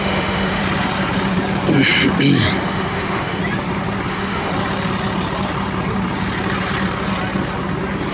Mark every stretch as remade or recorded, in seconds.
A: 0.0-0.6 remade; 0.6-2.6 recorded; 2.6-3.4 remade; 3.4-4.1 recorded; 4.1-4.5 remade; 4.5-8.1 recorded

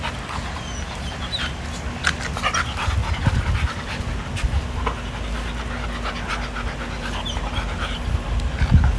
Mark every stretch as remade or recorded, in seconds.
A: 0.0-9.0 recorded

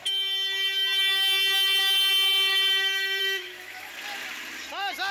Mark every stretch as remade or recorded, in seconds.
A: 0.0-3.2 recorded; 3.2-3.9 remade; 3.9-5.1 recorded

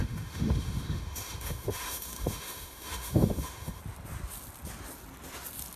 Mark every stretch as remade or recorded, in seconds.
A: 0.0-3.8 remade; 3.8-5.8 recorded